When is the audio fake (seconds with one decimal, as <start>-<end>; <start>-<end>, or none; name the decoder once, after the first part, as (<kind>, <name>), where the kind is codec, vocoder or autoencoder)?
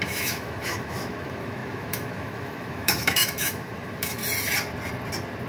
0.0-4.2 (autoencoder, DAC-VAE)